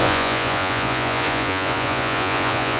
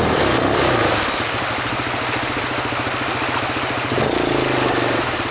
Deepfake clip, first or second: first